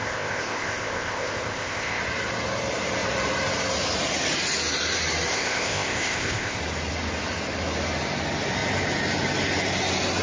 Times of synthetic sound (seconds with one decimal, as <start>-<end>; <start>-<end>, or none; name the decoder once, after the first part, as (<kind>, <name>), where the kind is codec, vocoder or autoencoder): 0.0-2.0 (codec, ZipCodec); 5.3-6.6